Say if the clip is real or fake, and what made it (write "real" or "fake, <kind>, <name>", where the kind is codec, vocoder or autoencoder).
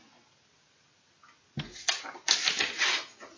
real